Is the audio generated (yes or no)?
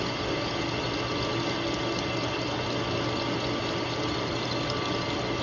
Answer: no